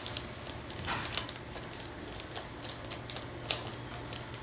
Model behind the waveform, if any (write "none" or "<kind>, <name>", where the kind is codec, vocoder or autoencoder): none